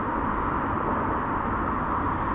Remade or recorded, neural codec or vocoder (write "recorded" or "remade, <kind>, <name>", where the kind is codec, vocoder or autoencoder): recorded